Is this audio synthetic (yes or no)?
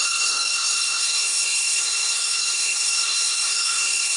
yes